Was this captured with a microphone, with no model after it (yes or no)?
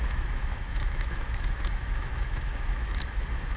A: no